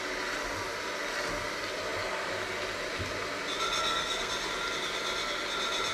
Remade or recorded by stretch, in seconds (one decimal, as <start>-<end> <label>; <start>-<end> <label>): 0.0-3.8 recorded; 3.8-4.3 remade; 4.3-5.9 recorded